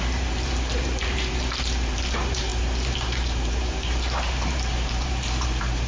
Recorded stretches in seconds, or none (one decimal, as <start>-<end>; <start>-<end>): none